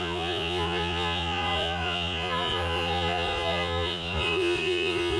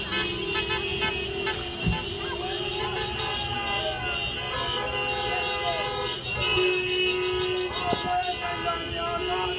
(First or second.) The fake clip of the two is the first